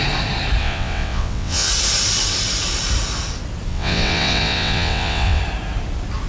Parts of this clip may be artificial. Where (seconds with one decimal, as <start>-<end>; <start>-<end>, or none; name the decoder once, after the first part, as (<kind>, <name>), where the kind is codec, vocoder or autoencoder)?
0.6-1.7 (vocoder, WaveNeXt); 3.7-5.4

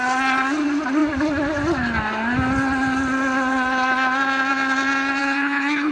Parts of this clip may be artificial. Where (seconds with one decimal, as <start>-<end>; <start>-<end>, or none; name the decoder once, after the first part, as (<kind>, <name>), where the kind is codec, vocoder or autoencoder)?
5.2-5.9 (codec, HILCodec)

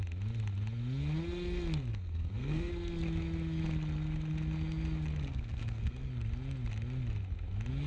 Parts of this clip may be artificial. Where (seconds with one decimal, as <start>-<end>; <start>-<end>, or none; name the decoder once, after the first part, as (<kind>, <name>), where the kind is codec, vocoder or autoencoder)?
1.9-2.7 (codec, SNAC); 5.3-6.1